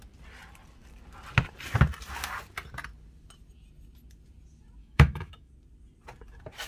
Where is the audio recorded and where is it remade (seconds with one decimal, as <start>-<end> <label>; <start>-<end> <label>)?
0.0-4.8 recorded; 4.8-5.5 remade; 5.5-6.7 recorded